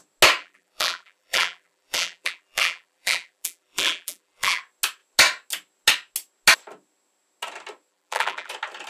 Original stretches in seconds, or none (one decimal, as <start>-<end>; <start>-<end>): 0.0-0.4; 4.6-7.9; 8.5-8.9